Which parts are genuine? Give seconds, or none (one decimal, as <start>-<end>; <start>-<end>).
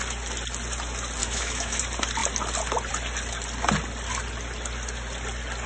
0.0-1.2; 1.8-5.7